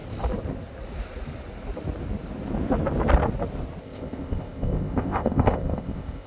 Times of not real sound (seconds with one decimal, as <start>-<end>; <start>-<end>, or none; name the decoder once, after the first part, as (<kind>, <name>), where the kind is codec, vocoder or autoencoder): 3.8-6.3 (codec, ZipCodec)